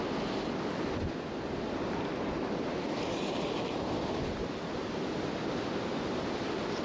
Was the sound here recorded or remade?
recorded